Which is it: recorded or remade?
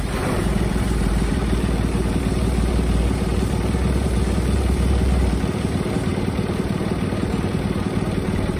remade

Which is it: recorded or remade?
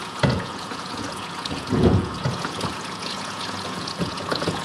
remade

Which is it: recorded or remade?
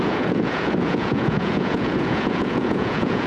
remade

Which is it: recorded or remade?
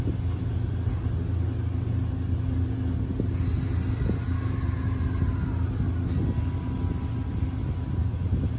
recorded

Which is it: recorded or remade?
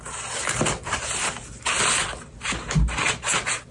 recorded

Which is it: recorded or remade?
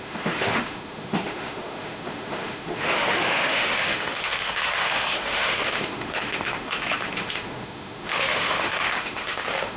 remade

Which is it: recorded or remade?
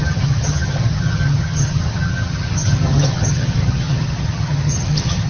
remade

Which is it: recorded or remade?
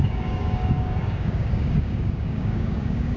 remade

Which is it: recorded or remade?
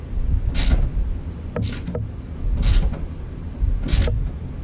recorded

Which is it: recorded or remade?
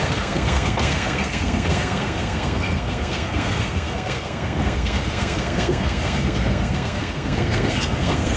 remade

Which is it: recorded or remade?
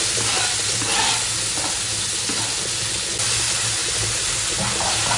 recorded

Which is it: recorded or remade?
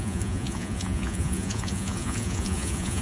remade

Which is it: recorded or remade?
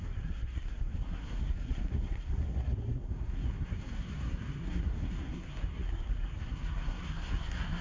remade